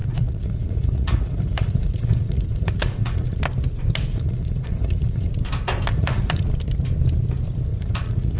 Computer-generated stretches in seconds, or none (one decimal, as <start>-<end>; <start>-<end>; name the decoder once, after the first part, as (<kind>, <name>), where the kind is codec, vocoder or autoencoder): 0.0-3.4 (vocoder, Vocos); 4.1-5.3; 5.9-6.4; 7.7-8.4